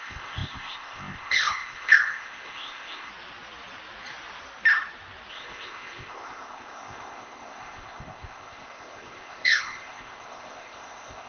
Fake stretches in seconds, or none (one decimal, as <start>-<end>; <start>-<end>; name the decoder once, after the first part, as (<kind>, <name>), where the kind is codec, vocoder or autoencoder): 0.0-3.1 (codec, ZipCodec); 5.3-11.3